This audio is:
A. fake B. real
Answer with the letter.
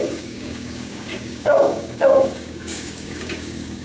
A